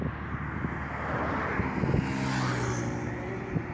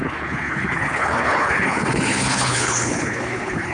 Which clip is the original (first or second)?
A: first